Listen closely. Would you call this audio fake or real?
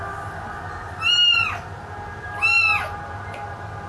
real